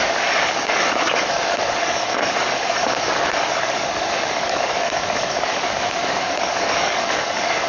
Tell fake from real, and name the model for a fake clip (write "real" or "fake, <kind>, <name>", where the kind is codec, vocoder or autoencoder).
fake, codec, DAC